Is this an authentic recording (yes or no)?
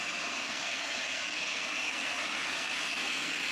no